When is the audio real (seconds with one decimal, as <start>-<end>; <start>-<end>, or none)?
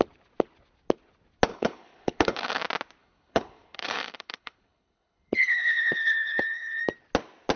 0.0-1.5; 2.6-3.0; 6.8-7.6